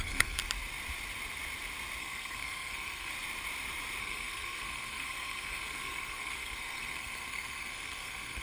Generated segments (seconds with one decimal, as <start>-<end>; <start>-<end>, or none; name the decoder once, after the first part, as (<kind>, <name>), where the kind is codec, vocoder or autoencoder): 0.0-0.4 (codec, SNAC); 2.0-3.1; 4.0-8.4